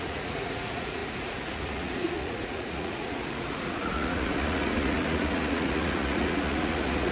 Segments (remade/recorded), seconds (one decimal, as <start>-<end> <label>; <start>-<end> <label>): 0.0-7.1 remade

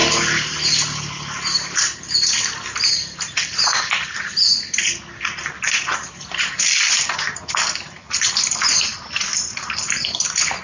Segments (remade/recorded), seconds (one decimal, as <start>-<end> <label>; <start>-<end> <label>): 0.0-10.6 recorded

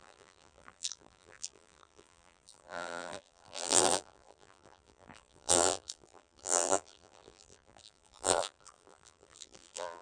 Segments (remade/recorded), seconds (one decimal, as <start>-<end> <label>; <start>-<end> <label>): 0.0-10.0 remade